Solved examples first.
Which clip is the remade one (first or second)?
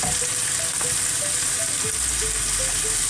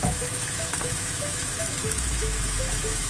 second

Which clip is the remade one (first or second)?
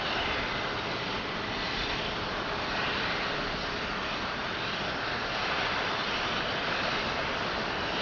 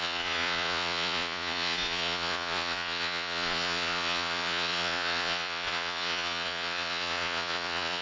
second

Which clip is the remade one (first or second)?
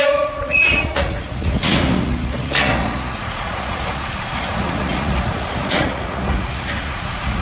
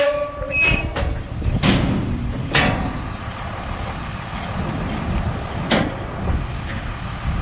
first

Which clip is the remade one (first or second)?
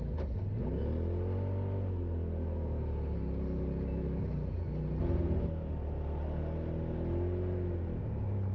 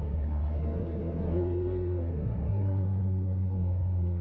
second